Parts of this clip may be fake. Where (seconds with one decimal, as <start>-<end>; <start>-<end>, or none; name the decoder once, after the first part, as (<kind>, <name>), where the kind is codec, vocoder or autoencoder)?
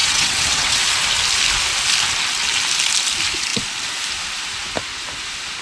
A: 0.0-0.8 (vocoder, WaveNeXt)